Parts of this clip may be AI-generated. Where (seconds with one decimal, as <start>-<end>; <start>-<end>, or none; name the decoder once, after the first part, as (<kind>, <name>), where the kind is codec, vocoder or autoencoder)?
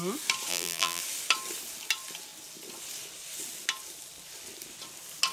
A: 0.5-1.0 (vocoder, BigVGAN v2)